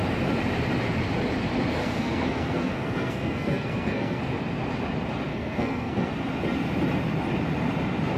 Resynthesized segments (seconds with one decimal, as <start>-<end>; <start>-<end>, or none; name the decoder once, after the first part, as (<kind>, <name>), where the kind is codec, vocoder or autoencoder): 1.8-4.2 (codec, SNAC); 5.3-6.1